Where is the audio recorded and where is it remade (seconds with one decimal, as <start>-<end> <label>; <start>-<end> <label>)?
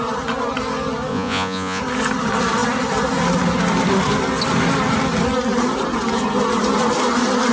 0.0-1.1 recorded; 1.1-1.8 remade; 1.8-7.5 recorded